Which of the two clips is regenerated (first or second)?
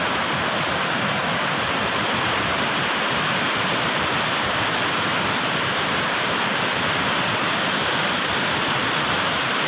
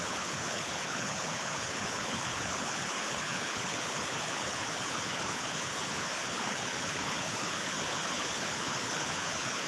second